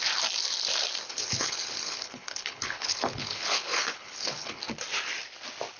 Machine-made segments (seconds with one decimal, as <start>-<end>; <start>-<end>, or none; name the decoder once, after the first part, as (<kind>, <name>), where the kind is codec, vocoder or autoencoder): 1.1-4.6 (codec, HILCodec)